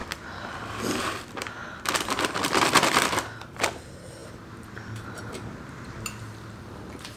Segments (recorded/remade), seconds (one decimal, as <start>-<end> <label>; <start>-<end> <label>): 0.0-1.6 remade; 1.6-2.9 recorded; 2.9-7.2 remade